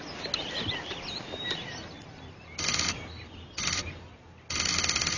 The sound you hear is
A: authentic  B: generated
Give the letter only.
A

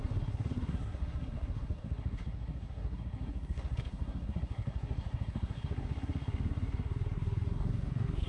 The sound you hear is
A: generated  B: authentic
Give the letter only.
A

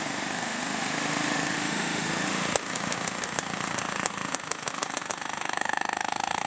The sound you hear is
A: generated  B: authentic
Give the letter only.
A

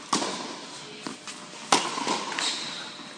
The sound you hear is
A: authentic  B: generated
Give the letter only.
A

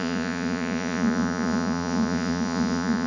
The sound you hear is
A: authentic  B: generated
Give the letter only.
B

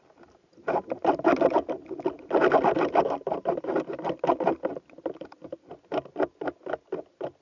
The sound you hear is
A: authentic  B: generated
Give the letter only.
A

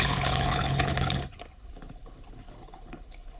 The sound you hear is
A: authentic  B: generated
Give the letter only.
B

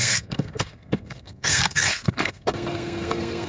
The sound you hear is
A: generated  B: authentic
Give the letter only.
A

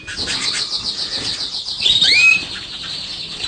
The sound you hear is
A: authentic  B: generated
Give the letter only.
A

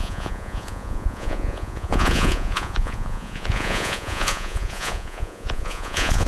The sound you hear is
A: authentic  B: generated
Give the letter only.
B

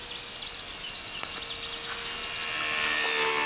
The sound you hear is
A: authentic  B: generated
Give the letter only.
A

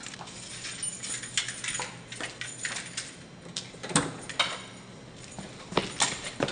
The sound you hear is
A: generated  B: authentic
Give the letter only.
B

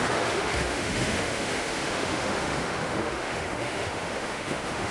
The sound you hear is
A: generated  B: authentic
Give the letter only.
A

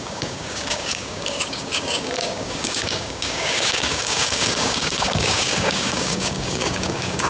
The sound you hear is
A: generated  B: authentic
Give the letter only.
A